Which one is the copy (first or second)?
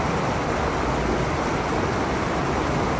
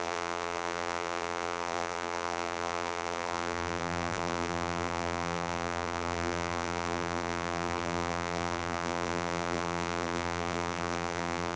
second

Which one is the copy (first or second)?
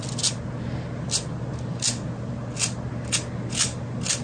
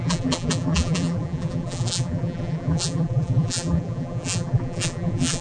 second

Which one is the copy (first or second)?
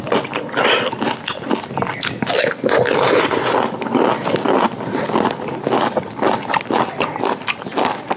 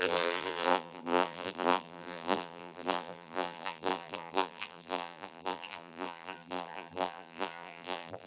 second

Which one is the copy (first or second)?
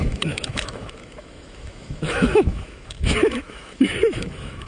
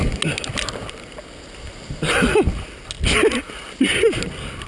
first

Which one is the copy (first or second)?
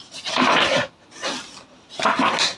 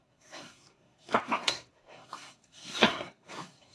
second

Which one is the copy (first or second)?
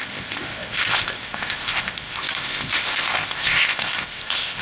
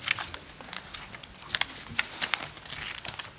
first